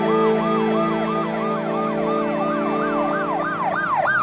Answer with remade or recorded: recorded